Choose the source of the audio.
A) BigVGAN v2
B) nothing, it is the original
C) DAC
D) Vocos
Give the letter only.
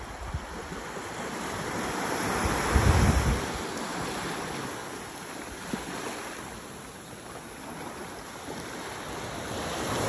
B